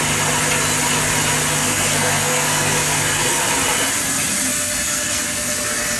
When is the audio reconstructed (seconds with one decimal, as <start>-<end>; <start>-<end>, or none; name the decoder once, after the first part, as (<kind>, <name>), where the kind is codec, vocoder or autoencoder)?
1.6-3.4 (codec, SNAC); 4.5-6.0

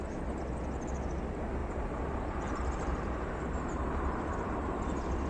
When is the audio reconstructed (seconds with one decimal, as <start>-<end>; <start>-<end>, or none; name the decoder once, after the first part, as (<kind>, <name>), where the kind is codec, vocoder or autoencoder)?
1.6-4.8 (vocoder, BigVGAN v2)

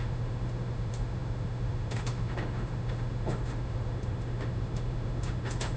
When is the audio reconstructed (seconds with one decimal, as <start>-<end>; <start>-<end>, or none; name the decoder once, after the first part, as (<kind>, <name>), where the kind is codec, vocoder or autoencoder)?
0.0-5.8 (autoencoder, DAC-VAE)

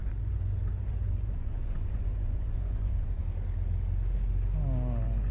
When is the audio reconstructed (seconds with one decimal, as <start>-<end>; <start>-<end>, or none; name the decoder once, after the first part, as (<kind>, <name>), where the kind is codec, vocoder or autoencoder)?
0.0-3.2 (vocoder, Vocos)

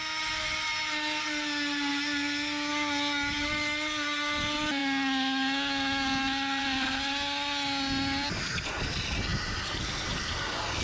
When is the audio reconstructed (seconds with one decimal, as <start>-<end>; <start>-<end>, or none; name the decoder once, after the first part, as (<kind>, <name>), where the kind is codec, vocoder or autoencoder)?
none

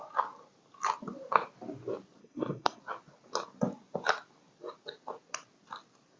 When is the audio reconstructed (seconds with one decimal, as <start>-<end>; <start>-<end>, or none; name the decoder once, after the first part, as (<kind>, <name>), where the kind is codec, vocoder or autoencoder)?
2.2-2.8 (codec, SNAC)

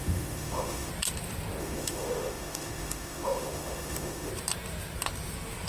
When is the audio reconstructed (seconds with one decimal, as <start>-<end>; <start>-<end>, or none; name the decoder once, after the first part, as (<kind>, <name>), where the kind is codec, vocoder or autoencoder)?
0.0-0.9 (autoencoder, DAC-VAE); 1.6-4.3

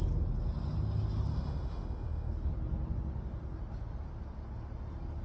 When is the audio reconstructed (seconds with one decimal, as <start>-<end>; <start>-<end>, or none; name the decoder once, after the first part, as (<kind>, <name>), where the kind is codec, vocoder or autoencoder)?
1.3-2.3 (autoencoder, DAC-VAE)